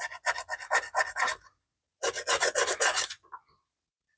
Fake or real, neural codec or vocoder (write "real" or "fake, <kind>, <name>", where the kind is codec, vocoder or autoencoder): real